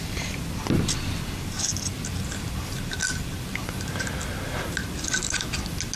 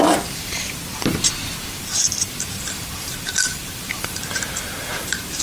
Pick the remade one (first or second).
second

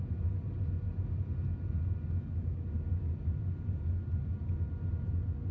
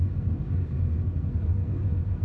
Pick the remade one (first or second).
second